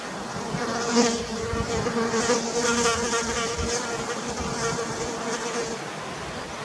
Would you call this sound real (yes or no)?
yes